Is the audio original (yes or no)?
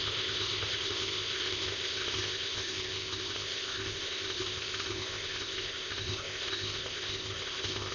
no